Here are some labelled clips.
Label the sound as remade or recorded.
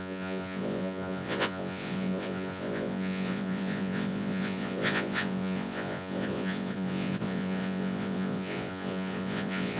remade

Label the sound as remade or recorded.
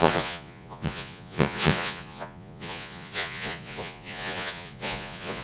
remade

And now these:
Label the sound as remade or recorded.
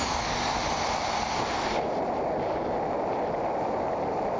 recorded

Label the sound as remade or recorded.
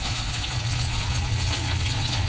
remade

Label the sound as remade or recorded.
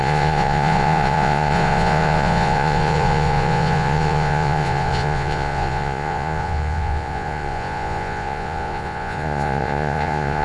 remade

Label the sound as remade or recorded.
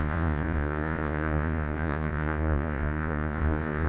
remade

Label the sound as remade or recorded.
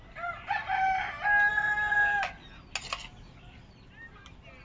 recorded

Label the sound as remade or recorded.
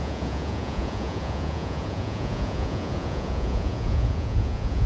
remade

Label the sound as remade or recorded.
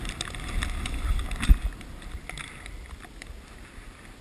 recorded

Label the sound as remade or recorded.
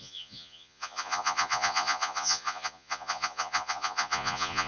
remade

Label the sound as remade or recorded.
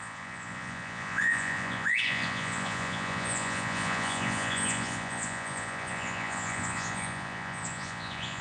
remade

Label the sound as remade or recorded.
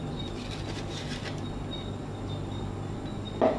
recorded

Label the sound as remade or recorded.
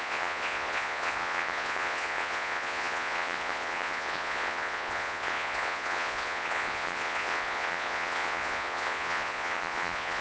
remade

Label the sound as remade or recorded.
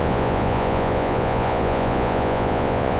remade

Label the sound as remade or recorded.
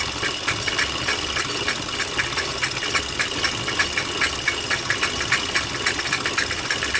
recorded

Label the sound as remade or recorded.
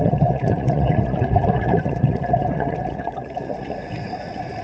remade